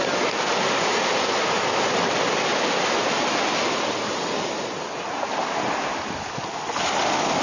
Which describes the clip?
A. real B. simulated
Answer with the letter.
A